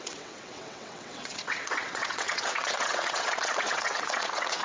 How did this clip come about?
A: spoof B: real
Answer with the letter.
A